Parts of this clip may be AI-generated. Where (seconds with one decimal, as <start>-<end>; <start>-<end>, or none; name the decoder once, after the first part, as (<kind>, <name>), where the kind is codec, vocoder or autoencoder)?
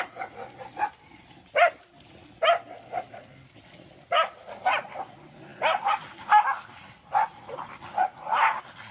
none